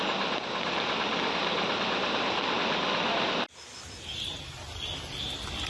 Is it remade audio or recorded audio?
recorded